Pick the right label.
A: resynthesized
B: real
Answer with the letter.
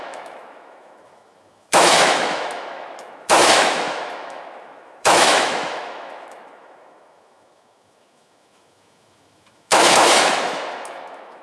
A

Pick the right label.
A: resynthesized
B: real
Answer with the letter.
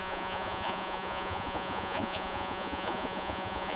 A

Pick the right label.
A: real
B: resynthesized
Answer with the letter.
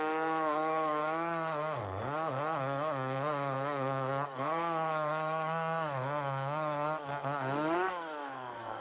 B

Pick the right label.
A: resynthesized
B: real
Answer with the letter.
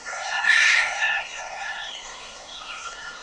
A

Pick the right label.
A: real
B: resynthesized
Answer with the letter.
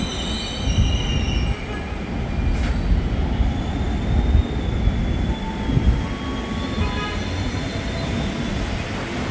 A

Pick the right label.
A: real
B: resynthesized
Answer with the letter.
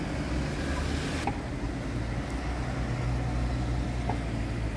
A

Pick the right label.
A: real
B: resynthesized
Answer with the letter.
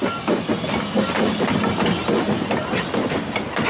A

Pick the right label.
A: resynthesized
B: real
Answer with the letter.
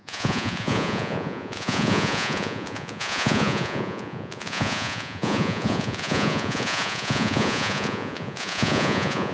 A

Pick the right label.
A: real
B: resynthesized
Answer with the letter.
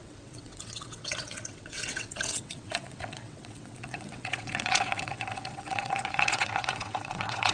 B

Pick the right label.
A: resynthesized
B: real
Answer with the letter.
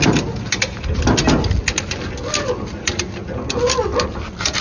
B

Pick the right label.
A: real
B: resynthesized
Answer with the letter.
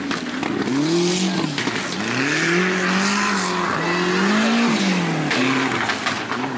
A